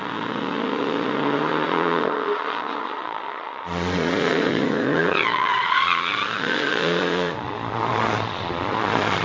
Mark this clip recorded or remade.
remade